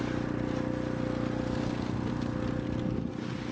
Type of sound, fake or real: real